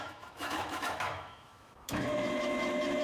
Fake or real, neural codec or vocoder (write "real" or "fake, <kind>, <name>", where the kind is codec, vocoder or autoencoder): fake, autoencoder, DAC-VAE